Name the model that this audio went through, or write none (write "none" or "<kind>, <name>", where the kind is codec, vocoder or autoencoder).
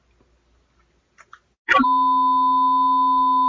none